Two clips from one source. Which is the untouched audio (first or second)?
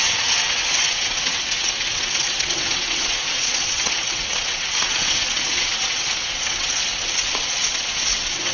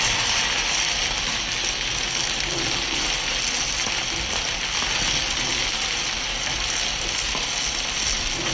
second